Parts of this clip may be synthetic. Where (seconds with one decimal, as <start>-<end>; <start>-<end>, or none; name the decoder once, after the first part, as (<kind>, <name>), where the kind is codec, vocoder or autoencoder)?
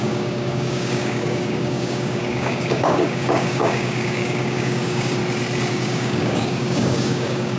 0.0-5.2 (codec, DAC); 5.7-7.6